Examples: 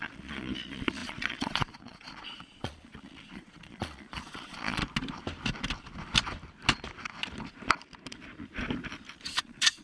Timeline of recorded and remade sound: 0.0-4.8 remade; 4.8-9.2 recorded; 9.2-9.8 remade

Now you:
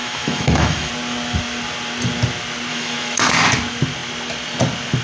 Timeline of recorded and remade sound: 0.0-0.9 remade; 0.9-2.7 recorded; 2.7-3.3 remade; 3.3-5.0 recorded

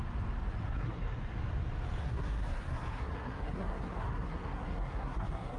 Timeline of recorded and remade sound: 0.0-0.6 recorded; 0.6-1.2 remade; 1.2-2.0 recorded; 2.0-5.6 remade

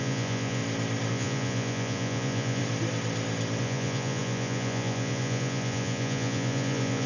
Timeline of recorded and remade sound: 0.0-0.6 remade; 0.6-1.1 recorded; 1.1-2.6 remade; 2.6-3.6 recorded; 3.6-7.1 remade

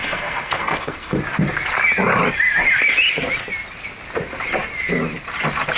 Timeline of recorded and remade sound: 0.0-1.2 remade; 1.2-5.8 recorded